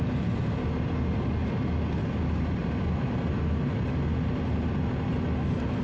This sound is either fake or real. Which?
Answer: real